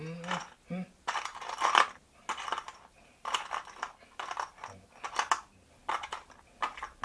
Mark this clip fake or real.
real